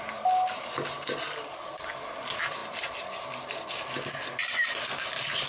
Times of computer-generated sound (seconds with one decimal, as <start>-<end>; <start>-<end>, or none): 2.6-3.9; 4.4-4.9